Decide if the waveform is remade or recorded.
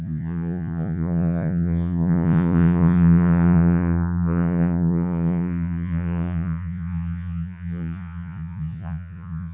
remade